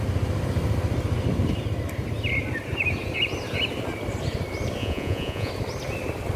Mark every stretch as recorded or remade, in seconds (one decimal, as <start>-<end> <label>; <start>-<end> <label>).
0.0-4.8 recorded; 4.8-5.5 remade; 5.5-6.4 recorded